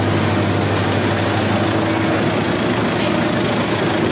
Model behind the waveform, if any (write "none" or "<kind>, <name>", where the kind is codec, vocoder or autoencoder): none